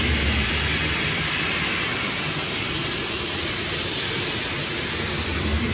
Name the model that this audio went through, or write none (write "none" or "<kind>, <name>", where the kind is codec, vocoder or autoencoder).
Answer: none